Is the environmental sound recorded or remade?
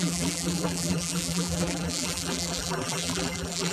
remade